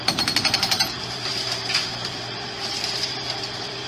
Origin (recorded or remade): remade